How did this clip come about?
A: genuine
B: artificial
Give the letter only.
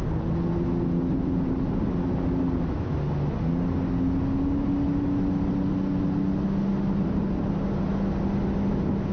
A